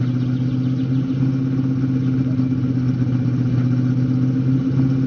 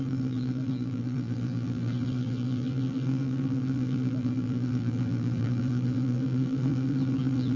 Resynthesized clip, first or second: second